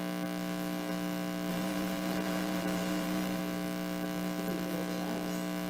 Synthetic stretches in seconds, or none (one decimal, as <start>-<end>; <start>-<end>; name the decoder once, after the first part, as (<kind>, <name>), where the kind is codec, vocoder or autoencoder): 1.5-3.4 (vocoder, BigVGAN v2)